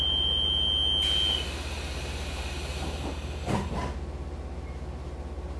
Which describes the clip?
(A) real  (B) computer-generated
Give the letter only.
A